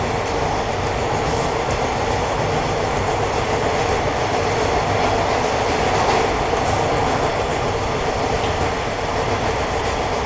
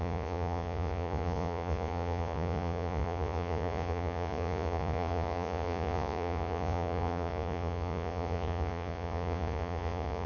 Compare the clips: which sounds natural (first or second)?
first